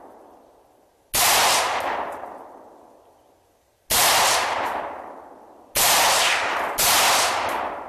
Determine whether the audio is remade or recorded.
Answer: recorded